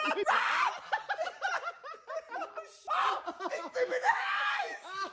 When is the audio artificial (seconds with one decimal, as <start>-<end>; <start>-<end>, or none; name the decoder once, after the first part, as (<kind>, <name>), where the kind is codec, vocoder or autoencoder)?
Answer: 3.5-5.1 (autoencoder, DAC-VAE)